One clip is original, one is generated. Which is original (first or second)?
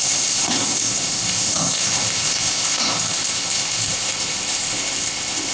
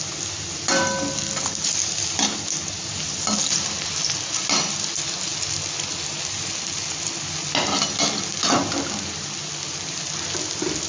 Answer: second